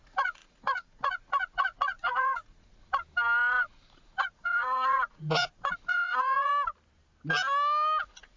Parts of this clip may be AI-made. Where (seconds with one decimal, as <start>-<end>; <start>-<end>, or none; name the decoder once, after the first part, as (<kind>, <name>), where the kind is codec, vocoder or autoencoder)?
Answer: 0.0-2.9 (vocoder, Vocos); 3.6-6.5; 8.0-8.4